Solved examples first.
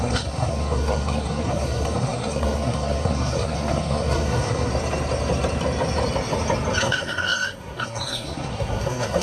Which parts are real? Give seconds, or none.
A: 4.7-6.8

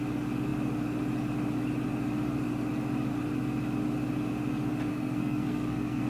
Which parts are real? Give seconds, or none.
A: 0.0-4.9